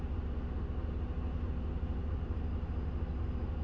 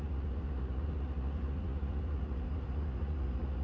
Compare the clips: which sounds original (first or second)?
first